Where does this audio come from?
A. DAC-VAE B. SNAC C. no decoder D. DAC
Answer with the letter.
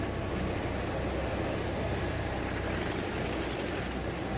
C